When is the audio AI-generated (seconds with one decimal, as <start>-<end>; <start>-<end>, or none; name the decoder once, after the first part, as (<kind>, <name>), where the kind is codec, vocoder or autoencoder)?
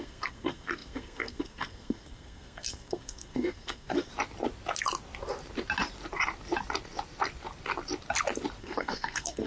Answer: 0.0-4.1 (codec, SNAC); 8.6-9.5